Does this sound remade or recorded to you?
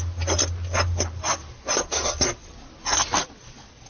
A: recorded